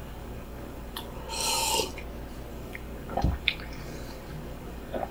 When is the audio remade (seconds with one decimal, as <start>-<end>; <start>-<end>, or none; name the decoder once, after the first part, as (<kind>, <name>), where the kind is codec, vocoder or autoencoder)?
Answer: 0.0-1.9 (codec, DAC); 2.5-5.1